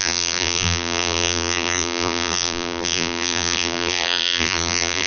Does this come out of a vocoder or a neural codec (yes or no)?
yes